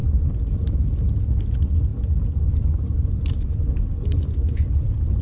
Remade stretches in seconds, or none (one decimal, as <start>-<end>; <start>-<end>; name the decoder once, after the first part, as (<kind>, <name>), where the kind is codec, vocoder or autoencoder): none